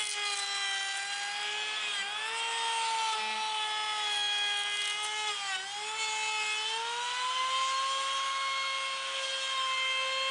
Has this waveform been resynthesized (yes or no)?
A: no